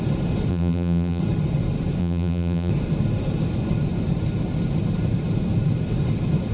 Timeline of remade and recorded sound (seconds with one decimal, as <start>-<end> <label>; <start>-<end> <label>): 0.0-0.5 recorded; 0.5-1.2 remade; 1.2-2.0 recorded; 2.0-2.7 remade; 2.7-6.5 recorded